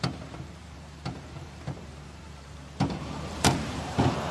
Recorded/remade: remade